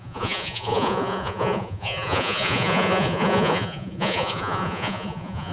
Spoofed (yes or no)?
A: yes